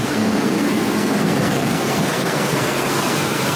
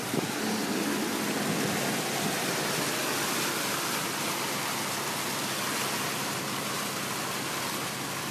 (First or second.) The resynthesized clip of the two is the first